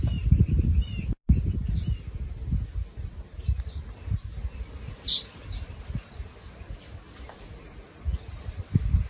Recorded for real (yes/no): yes